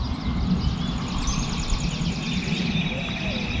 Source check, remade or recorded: recorded